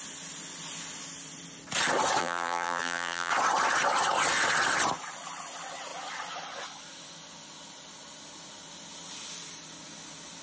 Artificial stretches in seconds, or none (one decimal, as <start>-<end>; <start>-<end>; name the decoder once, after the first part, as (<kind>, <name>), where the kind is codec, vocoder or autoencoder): 2.2-3.3 (vocoder, BigVGAN v2)